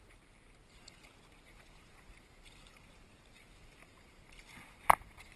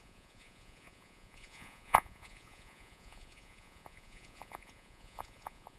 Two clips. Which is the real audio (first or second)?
first